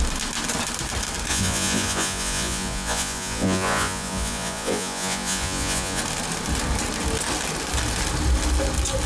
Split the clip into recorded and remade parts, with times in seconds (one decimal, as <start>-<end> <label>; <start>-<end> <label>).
0.0-1.3 recorded; 1.3-6.0 remade; 6.0-9.1 recorded